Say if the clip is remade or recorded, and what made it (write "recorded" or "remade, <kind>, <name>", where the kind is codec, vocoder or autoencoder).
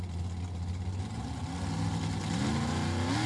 recorded